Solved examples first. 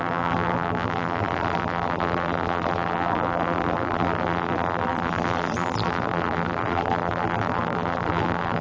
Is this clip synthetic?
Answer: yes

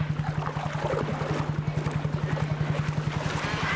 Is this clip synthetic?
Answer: no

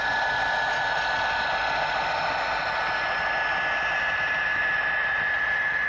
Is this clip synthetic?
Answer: no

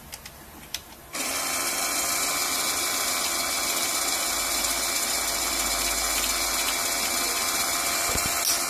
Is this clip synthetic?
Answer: no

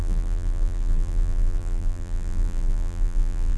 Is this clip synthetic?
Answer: yes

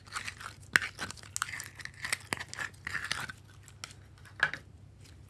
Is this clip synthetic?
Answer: no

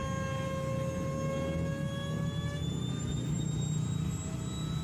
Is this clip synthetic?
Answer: no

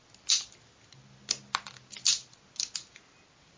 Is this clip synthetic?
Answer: no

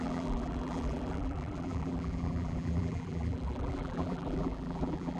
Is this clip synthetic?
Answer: yes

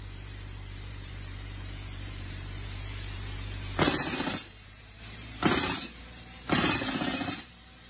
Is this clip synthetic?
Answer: yes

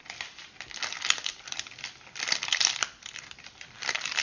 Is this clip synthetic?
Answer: yes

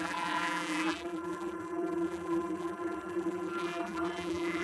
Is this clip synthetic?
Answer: yes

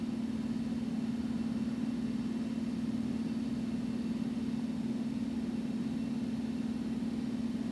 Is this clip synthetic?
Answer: no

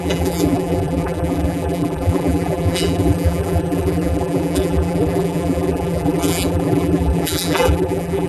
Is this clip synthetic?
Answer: yes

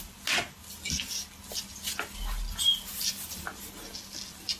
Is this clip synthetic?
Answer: no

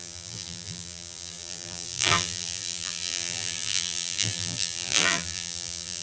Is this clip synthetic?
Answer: yes